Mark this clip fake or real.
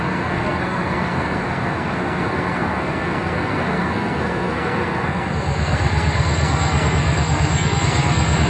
fake